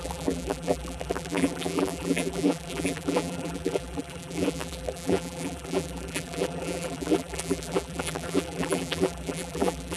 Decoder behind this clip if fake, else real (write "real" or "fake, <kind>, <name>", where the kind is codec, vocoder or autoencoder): fake, vocoder, BigVGAN v2